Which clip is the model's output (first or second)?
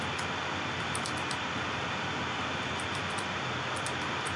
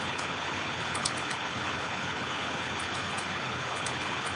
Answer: second